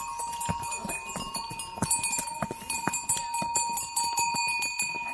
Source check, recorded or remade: recorded